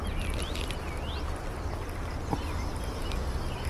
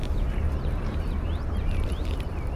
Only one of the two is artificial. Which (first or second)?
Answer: second